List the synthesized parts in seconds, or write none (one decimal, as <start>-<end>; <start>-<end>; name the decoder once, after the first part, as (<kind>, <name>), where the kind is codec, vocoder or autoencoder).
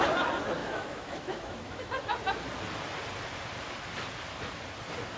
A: 0.6-1.9 (autoencoder, DAC-VAE)